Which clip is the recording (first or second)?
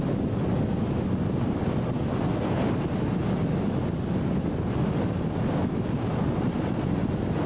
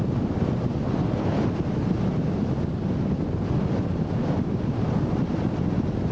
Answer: first